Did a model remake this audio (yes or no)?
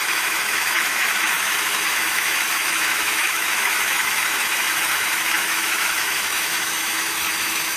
yes